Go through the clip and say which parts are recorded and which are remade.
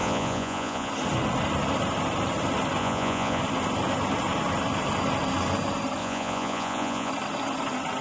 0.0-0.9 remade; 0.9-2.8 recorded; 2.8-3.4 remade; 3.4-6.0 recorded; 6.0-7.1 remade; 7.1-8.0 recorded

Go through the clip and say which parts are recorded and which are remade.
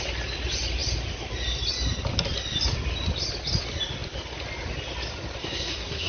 0.0-5.4 recorded; 5.4-6.1 remade